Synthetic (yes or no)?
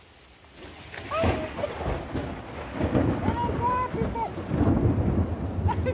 no